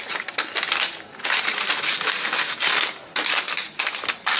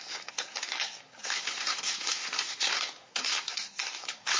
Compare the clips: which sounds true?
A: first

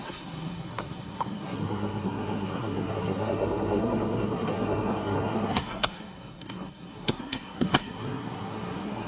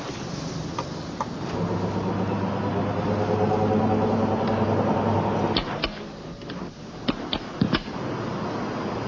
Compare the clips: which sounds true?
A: second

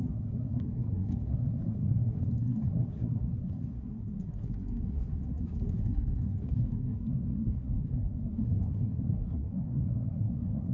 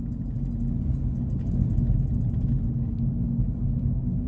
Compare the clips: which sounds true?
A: second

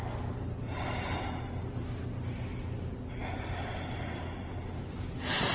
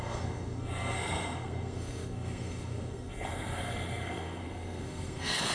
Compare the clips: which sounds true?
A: first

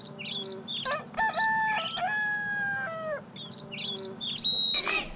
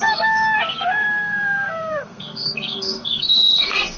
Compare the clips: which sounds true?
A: first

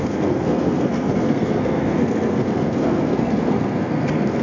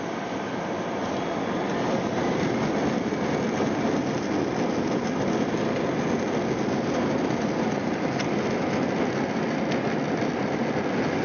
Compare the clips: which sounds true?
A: second